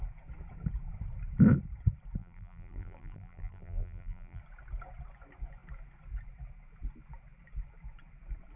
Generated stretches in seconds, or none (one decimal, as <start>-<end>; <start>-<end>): 2.2-4.4